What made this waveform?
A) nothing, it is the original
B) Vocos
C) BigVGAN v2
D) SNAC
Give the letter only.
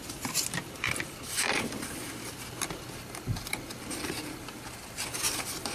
A